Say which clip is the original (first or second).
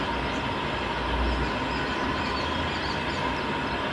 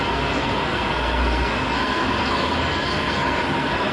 first